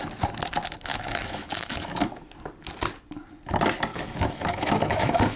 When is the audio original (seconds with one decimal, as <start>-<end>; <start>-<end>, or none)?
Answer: 0.0-0.9; 2.3-3.9